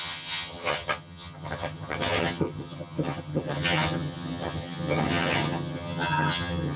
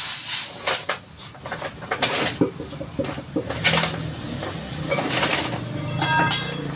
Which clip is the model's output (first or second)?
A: first